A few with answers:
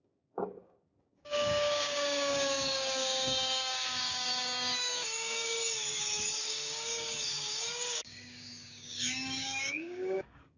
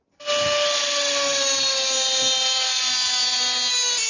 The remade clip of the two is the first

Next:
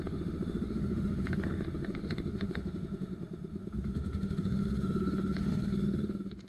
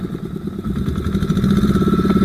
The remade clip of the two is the first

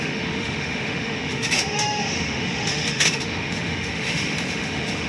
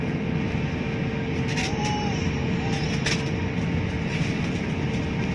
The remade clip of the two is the first